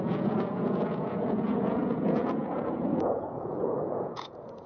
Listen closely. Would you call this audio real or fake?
fake